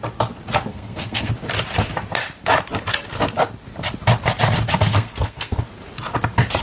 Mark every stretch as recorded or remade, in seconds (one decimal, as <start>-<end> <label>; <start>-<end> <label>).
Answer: 0.0-0.7 recorded; 0.7-1.3 remade; 1.3-4.9 recorded; 4.9-5.6 remade; 5.6-6.6 recorded